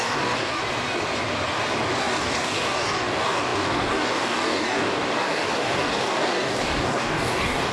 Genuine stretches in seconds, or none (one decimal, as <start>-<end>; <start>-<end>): 0.6-2.0

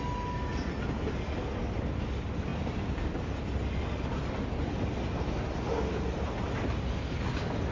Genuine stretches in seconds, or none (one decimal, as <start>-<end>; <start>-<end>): 0.0-7.7

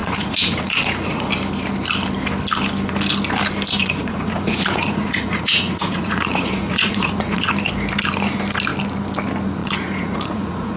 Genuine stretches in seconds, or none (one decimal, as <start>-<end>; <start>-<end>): 1.3-3.8; 7.5-9.6

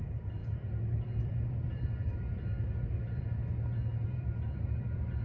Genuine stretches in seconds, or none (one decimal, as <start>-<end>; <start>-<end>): 0.0-0.4; 3.2-3.9

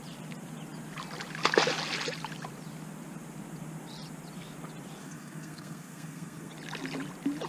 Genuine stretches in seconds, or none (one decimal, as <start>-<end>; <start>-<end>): 0.0-5.0; 6.5-7.5

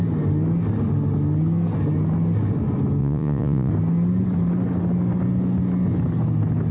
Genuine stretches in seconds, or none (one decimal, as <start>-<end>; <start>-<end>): 0.0-3.0; 3.7-6.7